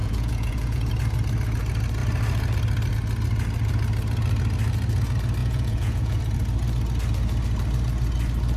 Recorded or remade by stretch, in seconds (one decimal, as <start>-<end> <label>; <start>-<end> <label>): 0.0-0.9 remade; 0.9-5.4 recorded; 5.4-6.2 remade; 6.2-8.6 recorded